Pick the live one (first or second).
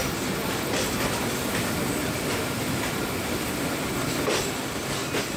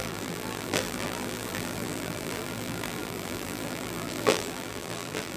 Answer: first